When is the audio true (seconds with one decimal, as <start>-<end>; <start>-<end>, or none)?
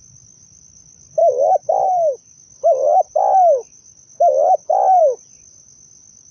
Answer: 0.0-6.3